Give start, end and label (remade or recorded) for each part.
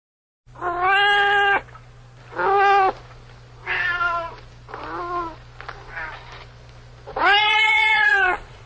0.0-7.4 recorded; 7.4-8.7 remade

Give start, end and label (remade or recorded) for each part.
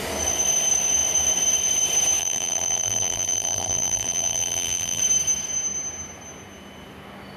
0.0-2.2 recorded; 2.2-5.0 remade; 5.0-7.4 recorded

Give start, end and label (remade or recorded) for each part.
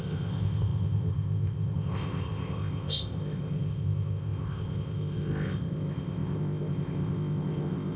0.0-8.0 remade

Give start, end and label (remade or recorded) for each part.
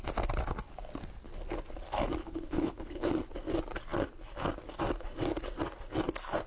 0.0-2.2 recorded; 2.2-3.1 remade; 3.1-6.5 recorded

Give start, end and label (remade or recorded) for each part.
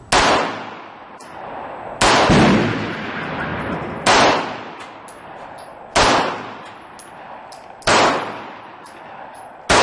0.0-9.8 recorded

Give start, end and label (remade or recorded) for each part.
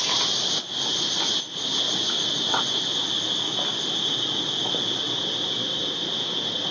0.0-6.7 recorded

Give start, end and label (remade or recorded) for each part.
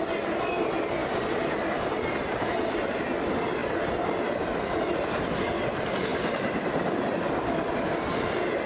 0.0-3.6 recorded; 3.6-5.6 remade; 5.6-6.1 recorded; 6.1-7.9 remade; 7.9-8.7 recorded